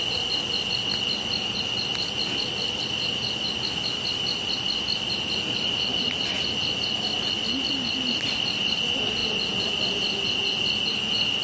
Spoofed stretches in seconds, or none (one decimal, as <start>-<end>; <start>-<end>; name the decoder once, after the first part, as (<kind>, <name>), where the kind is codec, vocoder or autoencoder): none